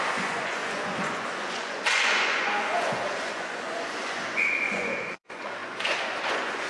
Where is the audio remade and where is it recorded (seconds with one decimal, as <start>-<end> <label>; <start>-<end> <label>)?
0.0-6.7 remade